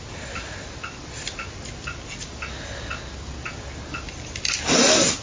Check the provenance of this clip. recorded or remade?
recorded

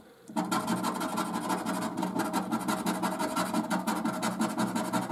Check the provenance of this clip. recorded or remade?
recorded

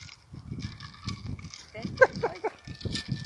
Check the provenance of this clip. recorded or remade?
recorded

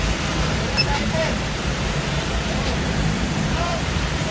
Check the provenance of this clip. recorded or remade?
remade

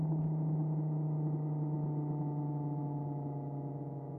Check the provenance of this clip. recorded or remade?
recorded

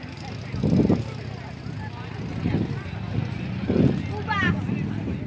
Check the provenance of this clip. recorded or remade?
recorded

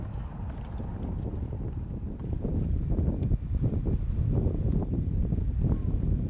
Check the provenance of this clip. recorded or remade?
remade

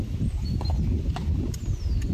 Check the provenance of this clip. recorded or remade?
recorded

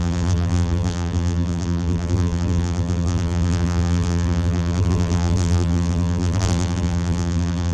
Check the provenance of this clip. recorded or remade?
remade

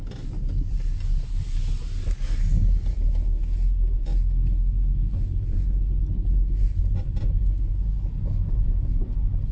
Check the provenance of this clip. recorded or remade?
recorded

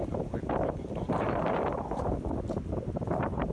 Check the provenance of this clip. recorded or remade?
remade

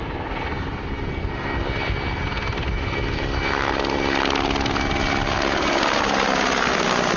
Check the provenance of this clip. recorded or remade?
recorded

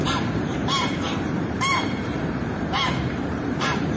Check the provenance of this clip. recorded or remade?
remade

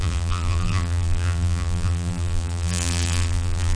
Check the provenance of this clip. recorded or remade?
remade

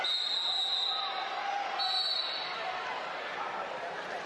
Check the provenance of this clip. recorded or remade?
recorded